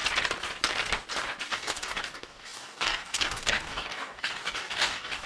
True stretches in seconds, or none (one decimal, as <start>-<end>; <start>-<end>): 0.0-1.5